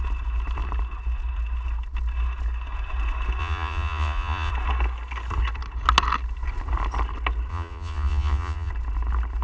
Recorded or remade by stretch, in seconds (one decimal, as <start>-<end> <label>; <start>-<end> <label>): 0.0-3.4 recorded; 3.4-4.5 remade; 4.5-7.5 recorded; 7.5-8.7 remade; 8.7-9.4 recorded

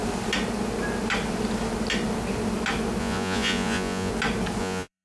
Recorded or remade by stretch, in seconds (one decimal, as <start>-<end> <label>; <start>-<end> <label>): 0.0-3.0 recorded; 3.0-4.1 remade; 4.1-4.6 recorded; 4.6-5.0 remade